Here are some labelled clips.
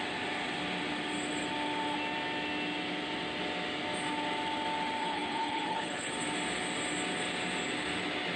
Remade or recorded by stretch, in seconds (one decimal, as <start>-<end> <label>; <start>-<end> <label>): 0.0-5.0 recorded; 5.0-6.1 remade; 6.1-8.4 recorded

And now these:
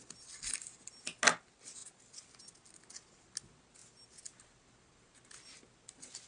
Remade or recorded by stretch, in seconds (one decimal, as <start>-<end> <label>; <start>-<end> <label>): 0.0-6.3 recorded

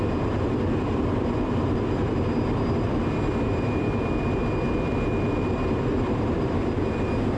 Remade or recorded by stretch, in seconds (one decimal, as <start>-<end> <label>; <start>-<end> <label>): 0.0-4.4 remade; 4.4-5.3 recorded; 5.3-7.4 remade

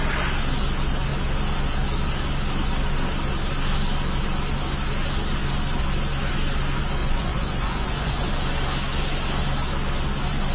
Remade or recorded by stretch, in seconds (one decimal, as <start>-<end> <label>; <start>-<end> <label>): 0.0-7.0 recorded; 7.0-8.3 remade; 8.3-10.5 recorded

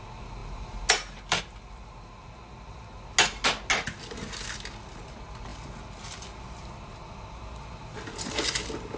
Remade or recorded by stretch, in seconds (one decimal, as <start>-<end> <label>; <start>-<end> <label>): 0.0-0.4 recorded; 0.4-1.4 remade; 1.4-9.0 recorded